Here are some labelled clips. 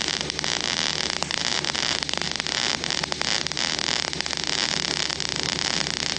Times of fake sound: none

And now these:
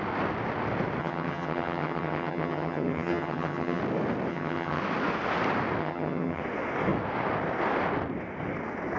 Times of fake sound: 1.0-3.8; 4.3-4.8; 5.8-6.4

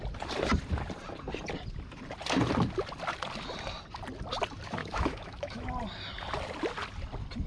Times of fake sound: 4.8-5.7

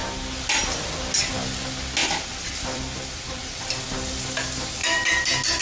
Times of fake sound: 2.0-3.6

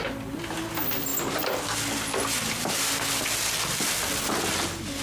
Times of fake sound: none